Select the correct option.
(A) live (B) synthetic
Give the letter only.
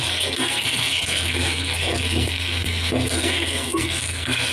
B